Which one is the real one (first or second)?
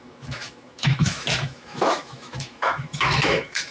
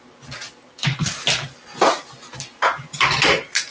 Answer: second